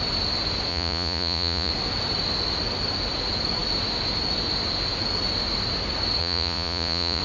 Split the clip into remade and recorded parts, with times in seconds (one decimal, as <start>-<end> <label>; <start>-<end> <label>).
0.0-0.7 recorded; 0.7-1.7 remade; 1.7-6.2 recorded; 6.2-7.2 remade